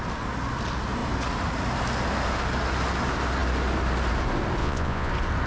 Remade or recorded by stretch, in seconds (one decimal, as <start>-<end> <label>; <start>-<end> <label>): 0.0-4.6 recorded; 4.6-5.1 remade; 5.1-5.5 recorded